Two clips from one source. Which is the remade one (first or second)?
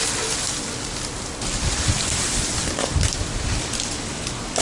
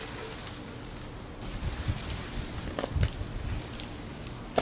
first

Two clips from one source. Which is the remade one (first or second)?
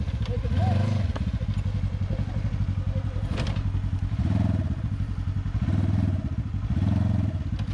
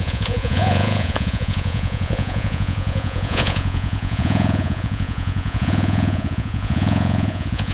second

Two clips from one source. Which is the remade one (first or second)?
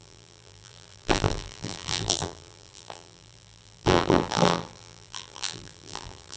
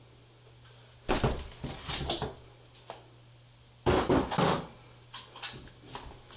first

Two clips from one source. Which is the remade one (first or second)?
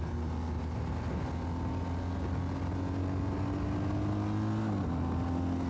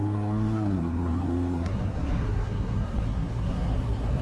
second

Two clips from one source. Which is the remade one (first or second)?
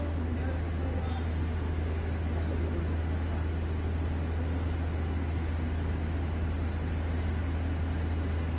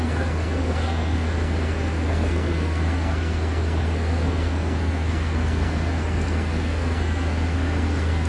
second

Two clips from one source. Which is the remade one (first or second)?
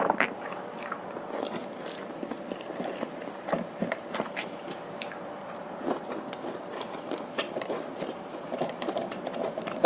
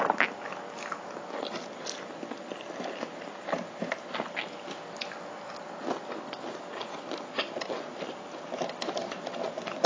first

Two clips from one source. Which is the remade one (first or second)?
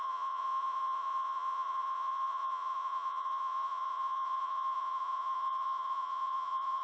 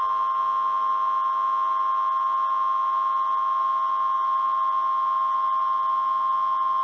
first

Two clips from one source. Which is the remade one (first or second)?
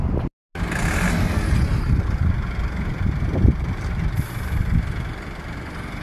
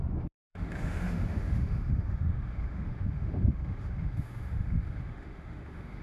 second